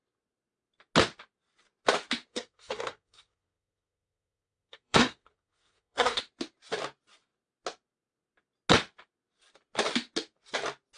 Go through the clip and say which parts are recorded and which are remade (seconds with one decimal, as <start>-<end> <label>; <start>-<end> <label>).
0.0-2.3 recorded; 2.3-6.2 remade; 6.2-11.0 recorded